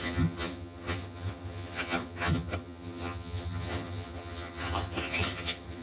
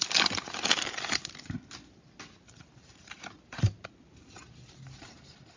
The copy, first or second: first